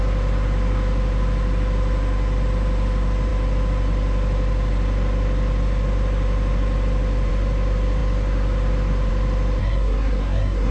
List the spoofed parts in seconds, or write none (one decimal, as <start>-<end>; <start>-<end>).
9.6-10.7